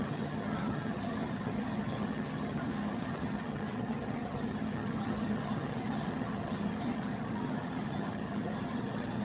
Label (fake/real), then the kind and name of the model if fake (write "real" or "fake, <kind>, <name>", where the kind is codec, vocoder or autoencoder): fake, vocoder, HiFi-GAN